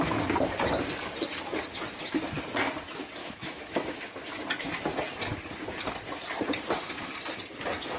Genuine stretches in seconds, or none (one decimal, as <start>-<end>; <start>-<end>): 0.0-3.2; 4.0-8.0